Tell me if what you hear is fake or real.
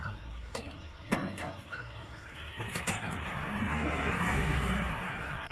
fake